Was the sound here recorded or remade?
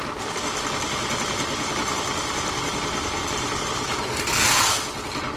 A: recorded